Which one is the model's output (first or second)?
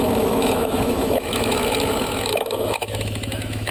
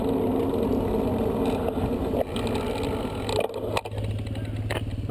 first